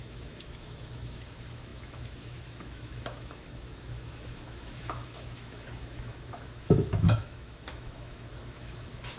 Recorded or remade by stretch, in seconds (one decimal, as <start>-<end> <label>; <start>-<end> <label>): 0.0-9.2 remade

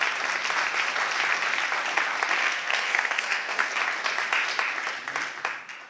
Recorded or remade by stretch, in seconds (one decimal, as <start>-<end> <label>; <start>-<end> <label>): 0.0-2.4 recorded; 2.4-3.7 remade; 3.7-5.9 recorded